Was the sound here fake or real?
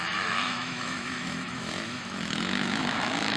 fake